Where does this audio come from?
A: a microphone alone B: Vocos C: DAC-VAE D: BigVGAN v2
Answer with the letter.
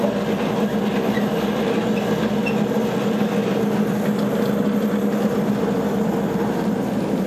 A